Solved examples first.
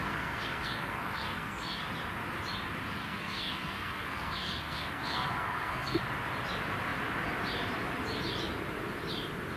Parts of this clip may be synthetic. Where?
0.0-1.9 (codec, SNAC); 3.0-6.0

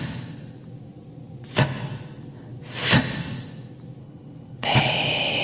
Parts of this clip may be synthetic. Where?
4.0-4.9 (codec, HILCodec)